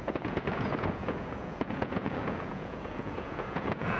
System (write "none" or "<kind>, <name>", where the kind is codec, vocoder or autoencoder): vocoder, Vocos